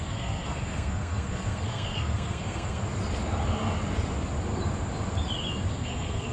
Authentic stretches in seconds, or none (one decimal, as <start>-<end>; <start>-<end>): 2.8-5.7